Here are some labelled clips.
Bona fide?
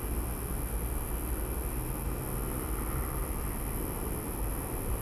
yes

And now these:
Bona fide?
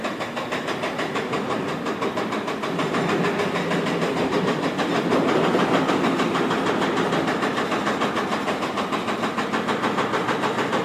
yes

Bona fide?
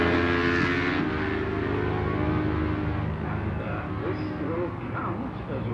yes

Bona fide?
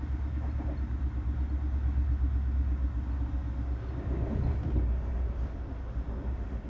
yes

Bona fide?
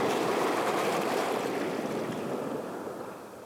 yes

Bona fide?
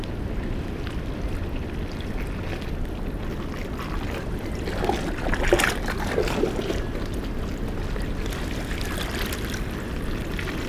yes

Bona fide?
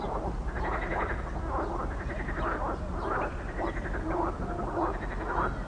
yes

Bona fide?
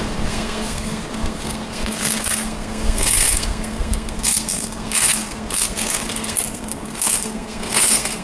no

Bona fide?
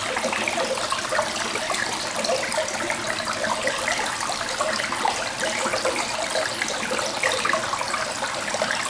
yes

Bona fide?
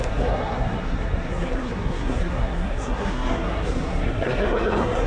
no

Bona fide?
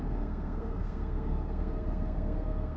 no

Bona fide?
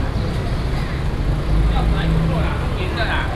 yes